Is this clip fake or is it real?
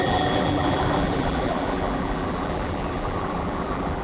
fake